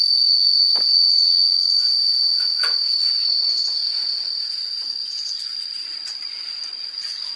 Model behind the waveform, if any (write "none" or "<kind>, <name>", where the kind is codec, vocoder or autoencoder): none